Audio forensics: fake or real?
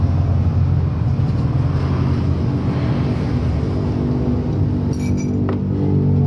real